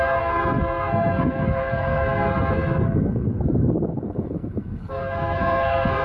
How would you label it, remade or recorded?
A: remade